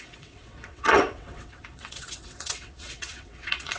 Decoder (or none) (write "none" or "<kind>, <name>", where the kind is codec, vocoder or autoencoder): vocoder, WaveNeXt